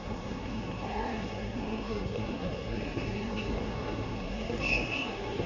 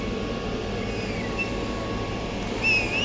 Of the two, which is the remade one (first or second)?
first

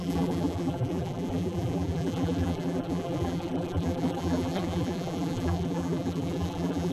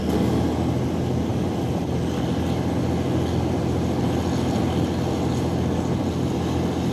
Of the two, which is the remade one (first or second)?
first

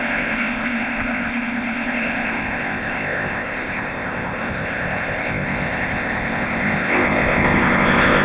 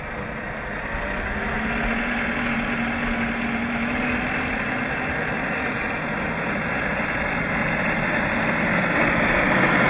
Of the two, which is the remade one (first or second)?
first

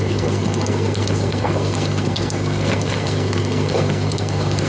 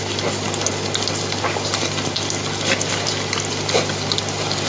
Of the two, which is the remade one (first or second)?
first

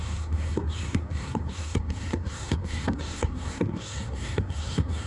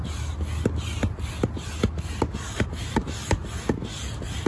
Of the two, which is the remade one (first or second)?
first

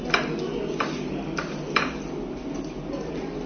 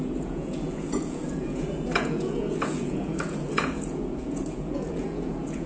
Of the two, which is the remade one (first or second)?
second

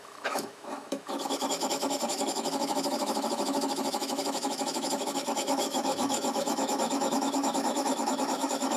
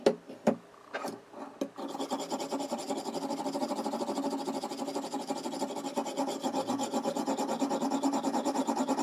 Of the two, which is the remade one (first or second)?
first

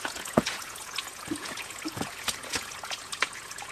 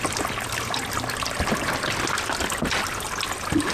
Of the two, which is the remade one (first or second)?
first